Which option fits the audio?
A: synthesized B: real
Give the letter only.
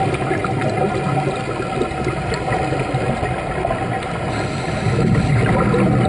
B